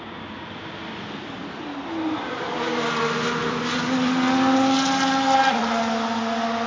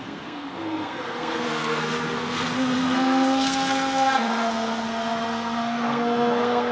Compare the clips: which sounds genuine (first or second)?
first